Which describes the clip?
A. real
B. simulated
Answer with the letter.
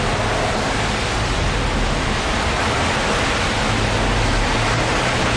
A